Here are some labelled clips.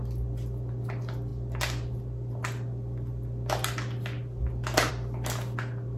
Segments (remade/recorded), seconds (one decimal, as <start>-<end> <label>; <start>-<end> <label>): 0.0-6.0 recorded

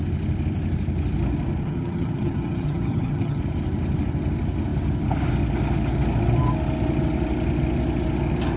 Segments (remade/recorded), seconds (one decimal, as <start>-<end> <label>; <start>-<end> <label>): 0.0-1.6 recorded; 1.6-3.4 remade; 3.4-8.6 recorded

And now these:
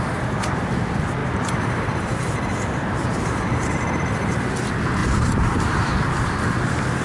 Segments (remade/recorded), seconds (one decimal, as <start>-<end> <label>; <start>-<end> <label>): 0.0-1.2 recorded; 1.2-4.1 remade; 4.1-5.0 recorded; 5.0-6.1 remade; 6.1-7.0 recorded

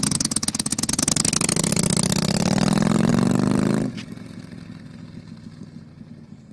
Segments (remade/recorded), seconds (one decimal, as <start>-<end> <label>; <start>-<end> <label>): 0.0-6.5 recorded